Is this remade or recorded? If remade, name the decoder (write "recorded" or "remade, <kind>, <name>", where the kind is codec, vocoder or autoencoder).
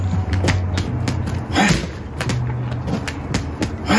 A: recorded